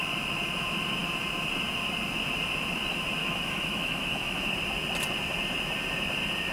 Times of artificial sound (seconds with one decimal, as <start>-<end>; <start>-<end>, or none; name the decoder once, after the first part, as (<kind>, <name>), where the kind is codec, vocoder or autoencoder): 3.2-4.5 (autoencoder, DAC-VAE)